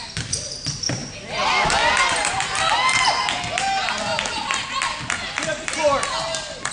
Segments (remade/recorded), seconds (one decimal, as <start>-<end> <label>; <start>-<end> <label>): 0.0-6.7 recorded